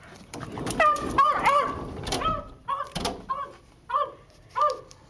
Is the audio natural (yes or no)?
no